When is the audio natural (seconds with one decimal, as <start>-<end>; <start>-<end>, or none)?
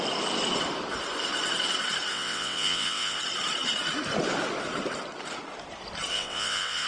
0.0-2.1; 3.2-6.1